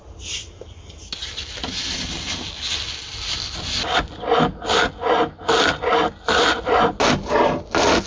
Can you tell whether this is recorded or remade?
recorded